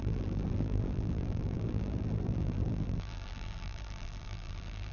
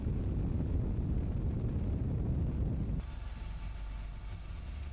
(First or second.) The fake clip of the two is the first